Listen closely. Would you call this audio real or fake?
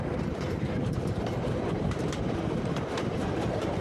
fake